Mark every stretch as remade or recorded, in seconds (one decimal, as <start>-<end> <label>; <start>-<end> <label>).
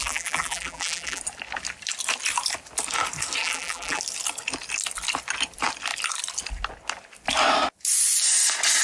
0.0-1.2 remade; 1.2-3.4 recorded; 3.4-4.0 remade; 4.0-8.8 recorded